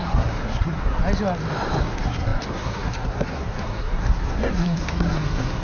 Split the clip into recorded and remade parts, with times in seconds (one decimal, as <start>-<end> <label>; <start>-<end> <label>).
0.0-1.0 remade; 1.0-1.8 recorded; 1.8-5.6 remade